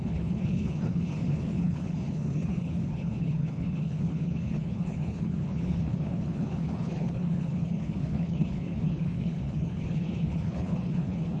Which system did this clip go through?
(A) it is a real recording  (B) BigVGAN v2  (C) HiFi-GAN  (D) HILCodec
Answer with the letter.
D